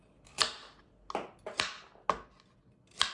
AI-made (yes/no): no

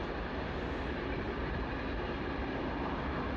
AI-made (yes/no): no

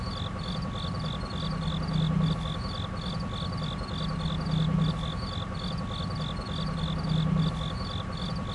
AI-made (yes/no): no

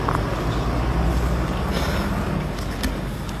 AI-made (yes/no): no